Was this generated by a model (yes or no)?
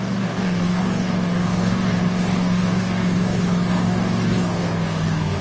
yes